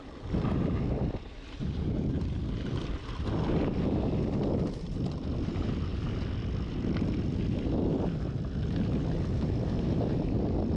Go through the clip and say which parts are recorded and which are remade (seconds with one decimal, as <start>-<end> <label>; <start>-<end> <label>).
0.0-5.9 remade; 5.9-9.0 recorded; 9.0-10.8 remade